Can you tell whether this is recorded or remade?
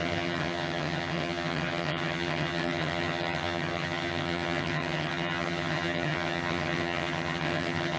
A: remade